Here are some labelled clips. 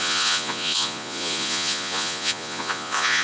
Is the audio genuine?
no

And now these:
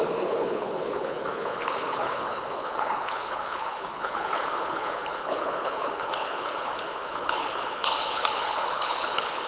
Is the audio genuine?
no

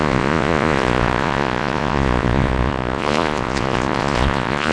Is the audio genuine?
no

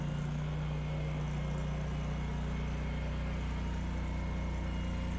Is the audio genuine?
yes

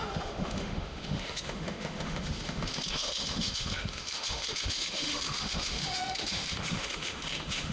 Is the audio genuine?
no